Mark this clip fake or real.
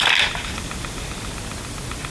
real